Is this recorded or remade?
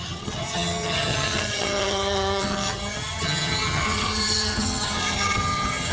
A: remade